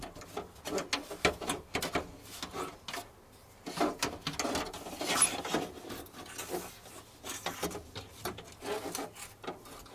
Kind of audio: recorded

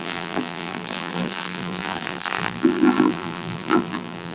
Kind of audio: remade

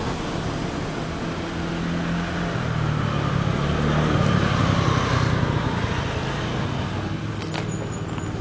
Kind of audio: recorded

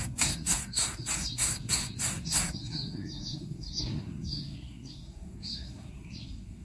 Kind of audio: remade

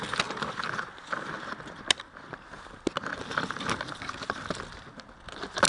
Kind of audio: recorded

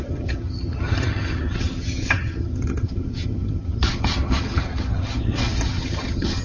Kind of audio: remade